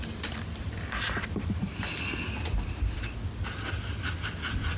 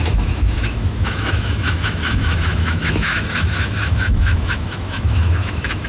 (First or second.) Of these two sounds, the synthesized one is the second